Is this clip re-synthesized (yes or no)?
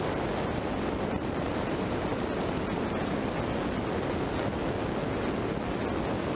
no